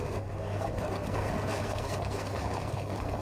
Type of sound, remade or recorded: remade